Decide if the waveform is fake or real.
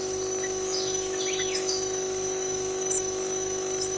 fake